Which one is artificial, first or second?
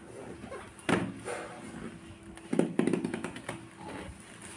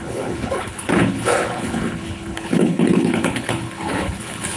second